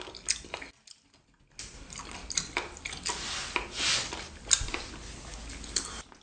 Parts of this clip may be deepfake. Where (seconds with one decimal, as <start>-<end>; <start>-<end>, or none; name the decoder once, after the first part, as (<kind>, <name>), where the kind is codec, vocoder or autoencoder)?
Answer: none